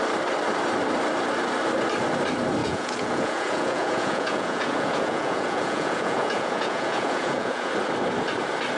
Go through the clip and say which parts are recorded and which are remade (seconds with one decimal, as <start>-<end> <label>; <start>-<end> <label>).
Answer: 0.0-2.6 recorded; 2.6-7.7 remade; 7.7-8.8 recorded